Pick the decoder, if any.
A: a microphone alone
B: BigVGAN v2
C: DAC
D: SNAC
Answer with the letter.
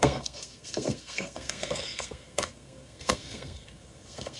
D